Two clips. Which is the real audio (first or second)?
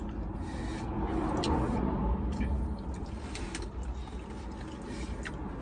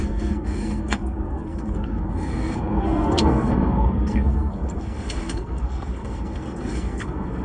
first